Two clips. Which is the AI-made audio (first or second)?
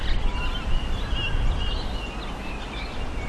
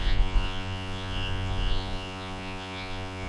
second